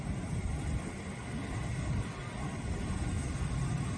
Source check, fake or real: real